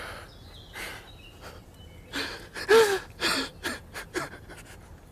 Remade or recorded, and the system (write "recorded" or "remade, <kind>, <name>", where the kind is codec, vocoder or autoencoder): recorded